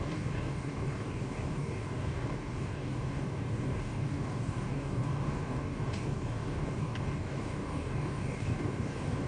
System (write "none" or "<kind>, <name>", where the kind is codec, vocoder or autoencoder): codec, DAC